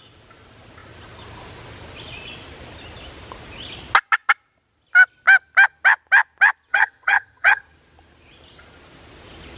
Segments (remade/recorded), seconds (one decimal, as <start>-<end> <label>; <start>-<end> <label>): 0.0-6.7 recorded; 6.7-7.6 remade; 7.6-9.6 recorded